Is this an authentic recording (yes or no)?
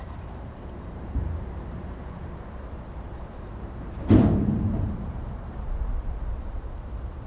no